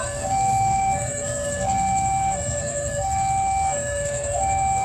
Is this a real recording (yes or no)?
no